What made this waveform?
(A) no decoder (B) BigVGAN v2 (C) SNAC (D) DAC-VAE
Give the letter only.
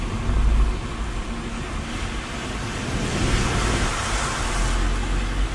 A